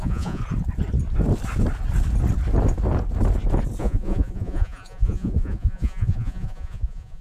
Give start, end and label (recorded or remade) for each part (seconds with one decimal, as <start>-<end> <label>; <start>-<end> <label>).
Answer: 0.0-0.4 remade; 0.4-3.8 recorded; 3.8-7.2 remade